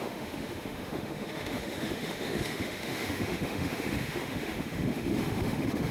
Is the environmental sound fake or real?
fake